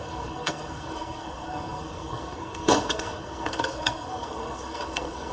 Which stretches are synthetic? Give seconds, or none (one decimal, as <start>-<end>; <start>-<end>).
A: 0.0-5.3